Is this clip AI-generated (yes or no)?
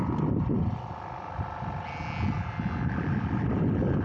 no